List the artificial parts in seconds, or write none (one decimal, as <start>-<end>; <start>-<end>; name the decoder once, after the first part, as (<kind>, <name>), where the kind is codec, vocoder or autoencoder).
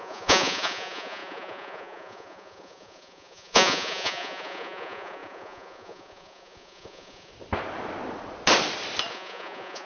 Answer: 0.0-7.3 (vocoder, Vocos); 9.1-9.9